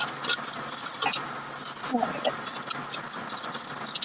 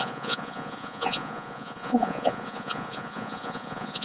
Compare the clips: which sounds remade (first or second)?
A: second